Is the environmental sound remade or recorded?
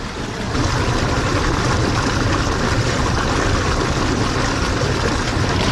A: recorded